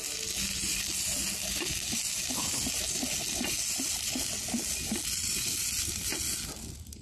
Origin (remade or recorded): recorded